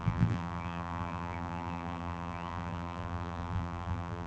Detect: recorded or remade remade